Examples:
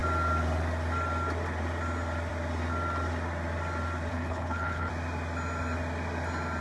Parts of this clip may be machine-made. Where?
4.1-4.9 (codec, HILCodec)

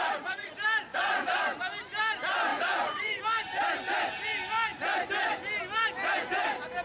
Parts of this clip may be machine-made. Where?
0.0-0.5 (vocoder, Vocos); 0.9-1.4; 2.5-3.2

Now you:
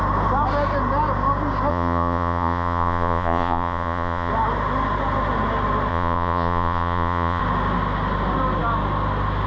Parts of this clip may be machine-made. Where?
1.7-4.3 (vocoder, Vocos); 5.9-7.4

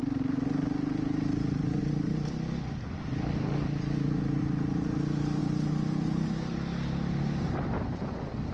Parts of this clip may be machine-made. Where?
none

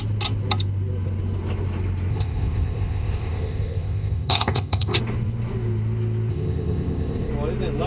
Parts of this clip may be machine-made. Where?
2.1-5.0 (codec, ZipCodec); 6.3-7.3